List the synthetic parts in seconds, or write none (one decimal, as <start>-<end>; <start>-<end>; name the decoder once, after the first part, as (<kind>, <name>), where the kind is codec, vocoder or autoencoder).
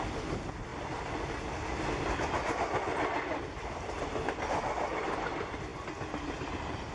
none